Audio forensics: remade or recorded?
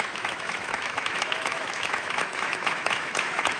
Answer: remade